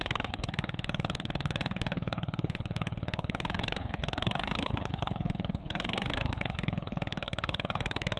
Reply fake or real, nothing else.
fake